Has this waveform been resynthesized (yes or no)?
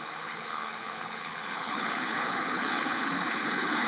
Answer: yes